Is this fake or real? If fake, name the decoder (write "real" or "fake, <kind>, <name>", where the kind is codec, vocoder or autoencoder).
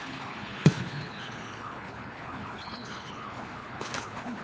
fake, codec, HILCodec